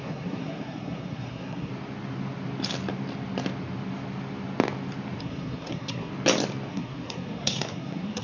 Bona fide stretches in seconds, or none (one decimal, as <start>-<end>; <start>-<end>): 1.7-5.2; 6.1-6.7